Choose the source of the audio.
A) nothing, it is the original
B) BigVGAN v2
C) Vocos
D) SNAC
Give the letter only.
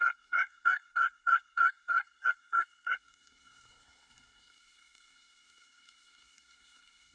D